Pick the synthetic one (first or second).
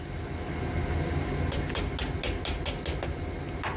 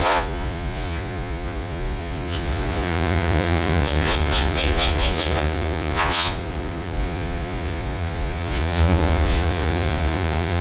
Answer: second